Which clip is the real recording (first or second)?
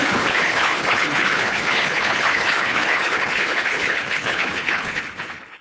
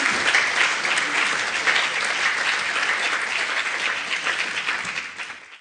second